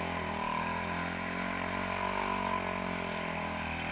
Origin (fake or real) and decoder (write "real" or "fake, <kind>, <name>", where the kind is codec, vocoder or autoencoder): real